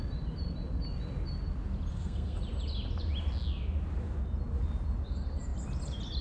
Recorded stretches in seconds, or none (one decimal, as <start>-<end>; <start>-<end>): 0.0-1.9; 2.4-6.2